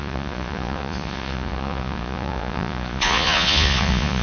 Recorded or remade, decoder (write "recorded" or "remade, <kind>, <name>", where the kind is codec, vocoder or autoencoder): remade, vocoder, Vocos